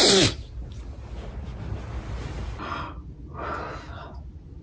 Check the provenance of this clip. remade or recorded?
recorded